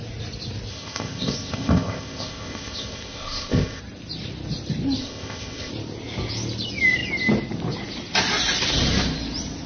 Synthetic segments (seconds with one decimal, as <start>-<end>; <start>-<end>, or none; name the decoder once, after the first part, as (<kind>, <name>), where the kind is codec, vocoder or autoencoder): 0.7-3.8 (codec, ZipCodec); 5.0-5.7